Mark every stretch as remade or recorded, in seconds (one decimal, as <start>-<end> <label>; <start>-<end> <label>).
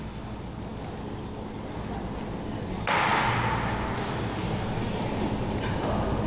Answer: 0.0-6.3 recorded